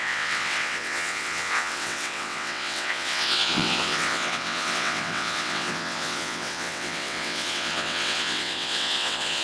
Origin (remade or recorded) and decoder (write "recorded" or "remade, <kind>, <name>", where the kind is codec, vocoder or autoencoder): remade, vocoder, WaveNeXt